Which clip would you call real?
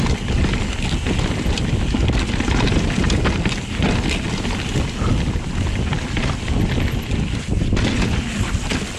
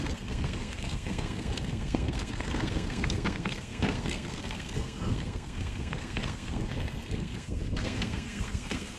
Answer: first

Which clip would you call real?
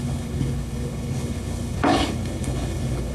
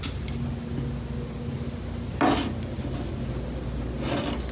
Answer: second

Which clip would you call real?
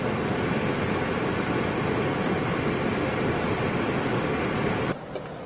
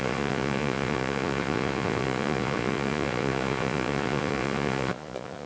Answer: first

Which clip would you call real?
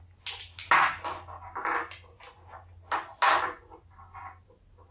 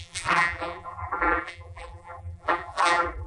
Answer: first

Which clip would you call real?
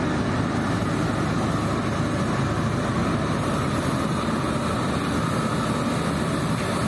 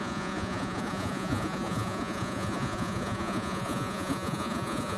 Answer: first